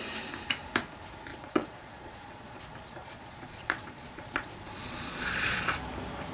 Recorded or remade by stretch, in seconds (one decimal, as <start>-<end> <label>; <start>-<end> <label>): 0.0-1.3 recorded; 1.3-2.6 remade; 2.6-3.0 recorded; 3.0-5.7 remade; 5.7-6.3 recorded

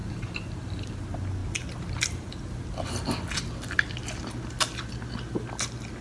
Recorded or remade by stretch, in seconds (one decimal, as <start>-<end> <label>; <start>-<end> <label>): 0.0-0.9 remade; 0.9-6.0 recorded

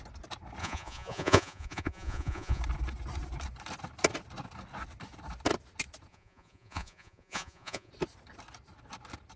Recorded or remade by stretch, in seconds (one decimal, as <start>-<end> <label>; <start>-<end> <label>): 0.0-0.6 recorded; 0.6-2.6 remade; 2.6-6.1 recorded; 6.1-7.9 remade; 7.9-9.4 recorded